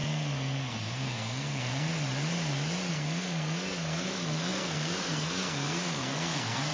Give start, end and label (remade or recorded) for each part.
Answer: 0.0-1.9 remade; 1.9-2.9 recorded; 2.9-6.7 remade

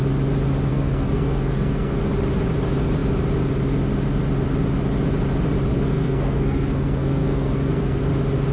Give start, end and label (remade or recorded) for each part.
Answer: 0.0-0.7 recorded; 0.7-2.0 remade; 2.0-5.7 recorded; 5.7-8.0 remade; 8.0-8.5 recorded

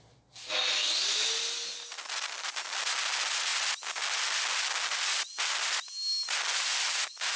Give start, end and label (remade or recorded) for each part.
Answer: 0.0-7.4 recorded